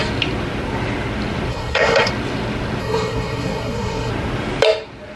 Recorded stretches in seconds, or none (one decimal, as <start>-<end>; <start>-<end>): 0.0-1.5; 2.1-2.8; 4.1-5.2